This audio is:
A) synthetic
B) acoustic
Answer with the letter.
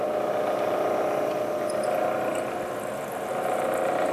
B